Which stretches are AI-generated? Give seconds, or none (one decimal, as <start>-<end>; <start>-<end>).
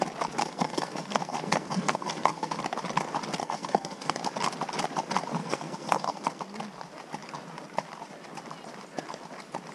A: 0.4-2.6; 3.4-4.2; 5.4-6.4